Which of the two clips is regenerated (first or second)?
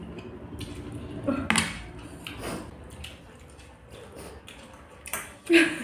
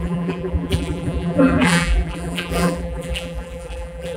second